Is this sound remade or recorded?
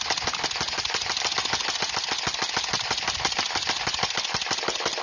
recorded